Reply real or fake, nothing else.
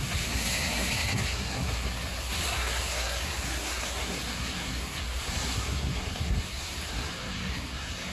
fake